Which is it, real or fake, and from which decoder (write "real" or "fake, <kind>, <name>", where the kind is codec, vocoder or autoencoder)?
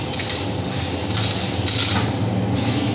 real